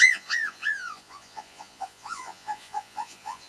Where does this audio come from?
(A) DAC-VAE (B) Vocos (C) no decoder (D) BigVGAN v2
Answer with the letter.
B